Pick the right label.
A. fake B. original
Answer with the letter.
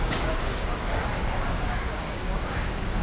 A